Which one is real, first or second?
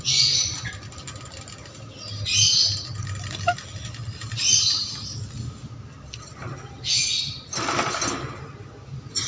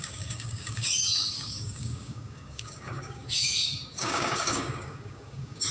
first